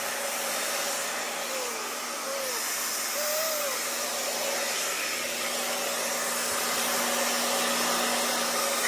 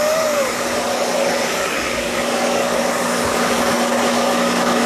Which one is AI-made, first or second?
second